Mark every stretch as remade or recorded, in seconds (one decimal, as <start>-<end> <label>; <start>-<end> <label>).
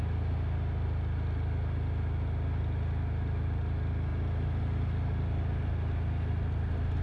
0.0-7.0 recorded